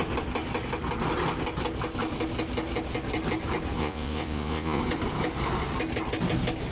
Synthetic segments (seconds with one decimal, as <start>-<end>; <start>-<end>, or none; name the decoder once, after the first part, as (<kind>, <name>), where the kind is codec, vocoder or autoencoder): 3.8-4.8 (vocoder, Vocos)